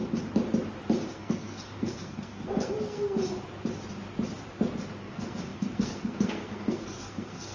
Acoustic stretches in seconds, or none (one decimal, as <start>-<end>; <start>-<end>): 0.0-1.1; 3.2-5.0